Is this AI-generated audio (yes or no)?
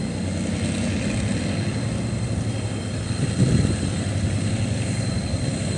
no